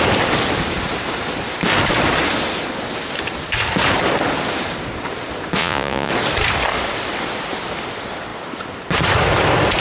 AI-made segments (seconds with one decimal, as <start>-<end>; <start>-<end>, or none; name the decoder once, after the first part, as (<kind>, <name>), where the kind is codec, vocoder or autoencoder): 5.6-6.1 (vocoder, Vocos)